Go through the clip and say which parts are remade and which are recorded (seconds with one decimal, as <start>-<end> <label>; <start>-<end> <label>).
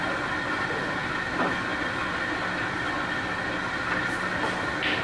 0.0-5.0 recorded